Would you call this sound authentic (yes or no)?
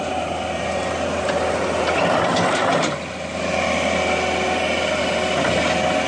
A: yes